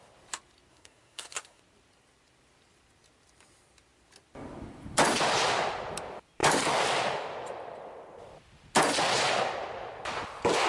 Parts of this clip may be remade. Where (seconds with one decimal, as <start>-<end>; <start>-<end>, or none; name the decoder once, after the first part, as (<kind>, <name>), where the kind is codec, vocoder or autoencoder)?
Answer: 0.7-1.6 (codec, SNAC)